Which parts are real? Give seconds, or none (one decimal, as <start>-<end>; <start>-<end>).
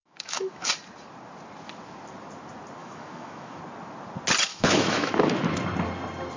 0.7-2.8; 3.6-4.5; 5.1-6.4